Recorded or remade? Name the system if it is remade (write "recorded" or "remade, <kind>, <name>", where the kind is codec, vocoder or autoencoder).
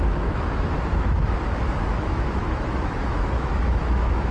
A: remade, autoencoder, DAC-VAE